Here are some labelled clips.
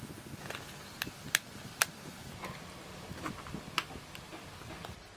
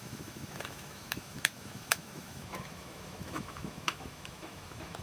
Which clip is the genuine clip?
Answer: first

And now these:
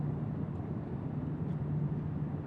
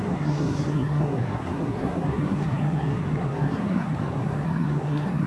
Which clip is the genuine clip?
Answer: first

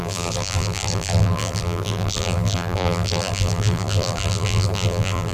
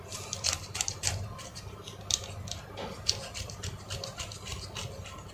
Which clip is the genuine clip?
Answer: second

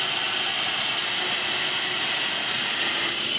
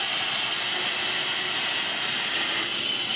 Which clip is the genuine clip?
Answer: second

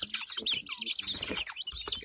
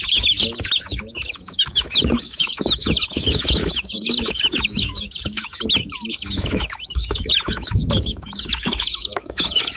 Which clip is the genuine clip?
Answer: first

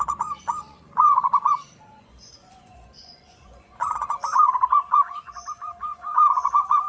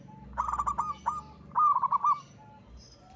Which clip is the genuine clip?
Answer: second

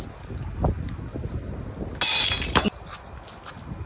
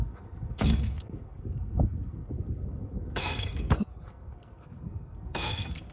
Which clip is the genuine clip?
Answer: first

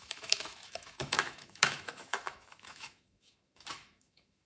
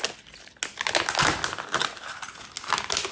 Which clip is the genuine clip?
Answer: second